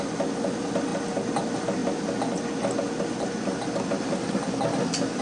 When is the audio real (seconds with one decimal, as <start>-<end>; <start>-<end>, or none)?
0.0-5.2